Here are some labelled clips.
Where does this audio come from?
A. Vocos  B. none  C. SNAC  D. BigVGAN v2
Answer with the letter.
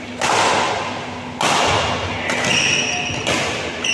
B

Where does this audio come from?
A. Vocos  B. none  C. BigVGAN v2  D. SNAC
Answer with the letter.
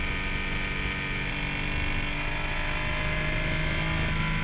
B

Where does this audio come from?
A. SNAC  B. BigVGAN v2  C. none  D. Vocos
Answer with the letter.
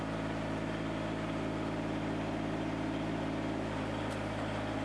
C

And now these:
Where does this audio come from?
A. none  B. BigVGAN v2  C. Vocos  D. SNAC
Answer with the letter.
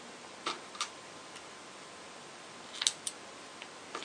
A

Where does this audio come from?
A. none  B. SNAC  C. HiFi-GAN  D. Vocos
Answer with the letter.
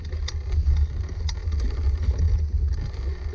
A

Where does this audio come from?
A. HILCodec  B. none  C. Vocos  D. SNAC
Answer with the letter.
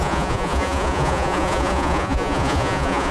C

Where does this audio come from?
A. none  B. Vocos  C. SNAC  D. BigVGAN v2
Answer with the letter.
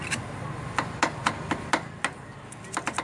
A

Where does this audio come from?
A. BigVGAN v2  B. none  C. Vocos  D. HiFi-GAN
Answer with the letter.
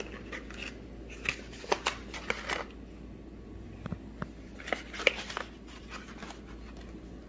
B